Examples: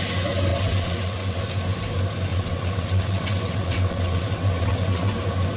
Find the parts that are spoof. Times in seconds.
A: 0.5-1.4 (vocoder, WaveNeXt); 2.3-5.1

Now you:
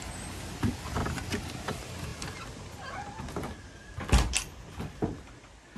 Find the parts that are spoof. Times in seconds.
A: none

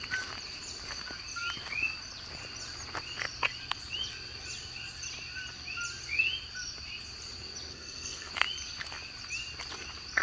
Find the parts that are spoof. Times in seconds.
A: 7.7-8.3 (codec, SNAC)

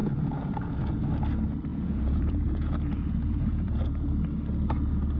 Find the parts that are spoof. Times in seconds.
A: 0.0-1.0 (vocoder, Vocos); 1.7-4.1

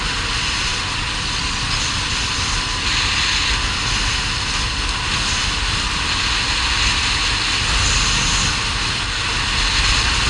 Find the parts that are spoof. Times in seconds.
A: 0.7-2.4 (vocoder, BigVGAN v2)